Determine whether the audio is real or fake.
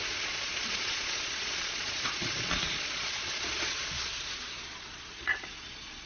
fake